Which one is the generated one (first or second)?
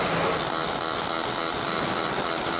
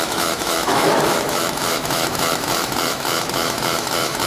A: second